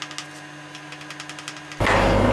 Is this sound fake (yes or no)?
no